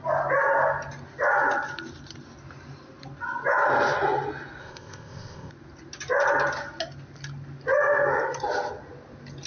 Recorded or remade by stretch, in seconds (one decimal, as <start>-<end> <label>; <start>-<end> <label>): 0.0-4.6 recorded; 4.6-5.5 remade; 5.5-9.5 recorded